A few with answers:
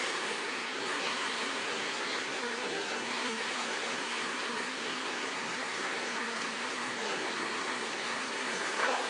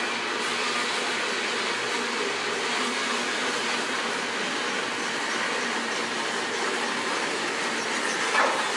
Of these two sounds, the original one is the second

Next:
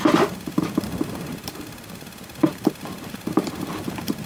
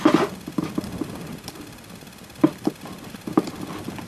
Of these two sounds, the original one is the second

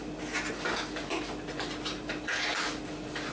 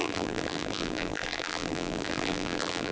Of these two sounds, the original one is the first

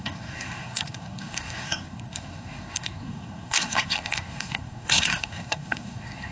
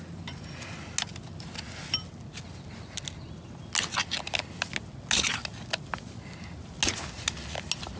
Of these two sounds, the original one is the second